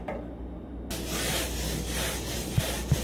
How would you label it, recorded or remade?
recorded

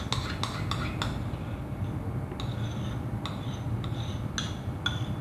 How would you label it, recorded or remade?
recorded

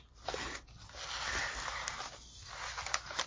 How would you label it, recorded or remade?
recorded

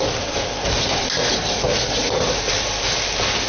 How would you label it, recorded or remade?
recorded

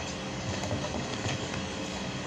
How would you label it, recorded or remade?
remade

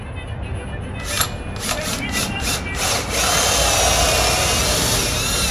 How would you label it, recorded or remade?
recorded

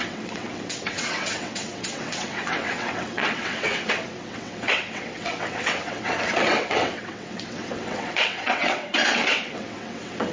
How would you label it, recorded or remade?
remade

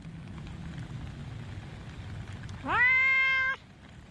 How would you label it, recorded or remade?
recorded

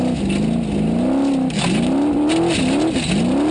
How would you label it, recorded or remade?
recorded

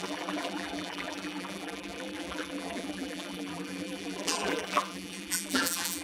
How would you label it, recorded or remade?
remade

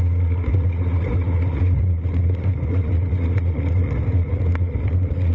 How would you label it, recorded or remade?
remade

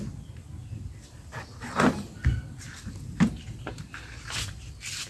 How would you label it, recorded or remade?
recorded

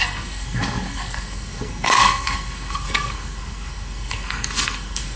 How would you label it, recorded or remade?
remade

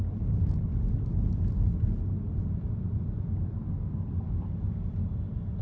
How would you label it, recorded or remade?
recorded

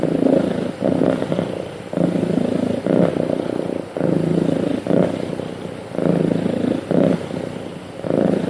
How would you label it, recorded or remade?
recorded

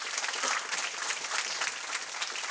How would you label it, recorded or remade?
recorded